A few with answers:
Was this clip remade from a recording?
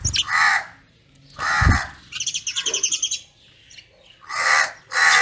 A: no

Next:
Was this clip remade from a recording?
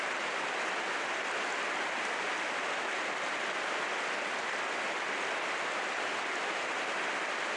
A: no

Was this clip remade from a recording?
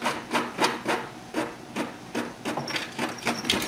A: no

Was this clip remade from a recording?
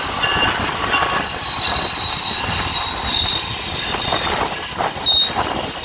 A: no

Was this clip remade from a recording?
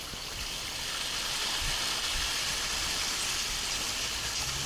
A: no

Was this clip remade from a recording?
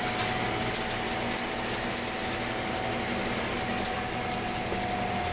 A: no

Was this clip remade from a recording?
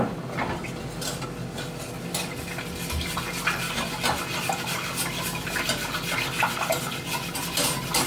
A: no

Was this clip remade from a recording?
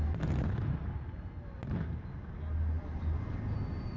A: no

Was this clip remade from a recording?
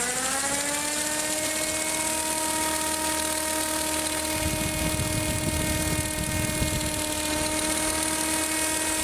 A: no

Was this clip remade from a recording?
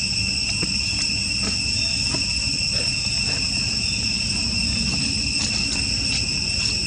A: no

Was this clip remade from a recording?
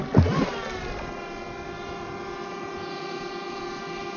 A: no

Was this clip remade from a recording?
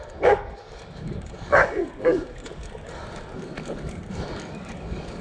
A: yes